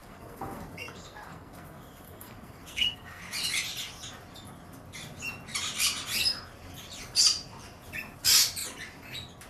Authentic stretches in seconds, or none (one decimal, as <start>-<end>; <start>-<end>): 3.2-9.5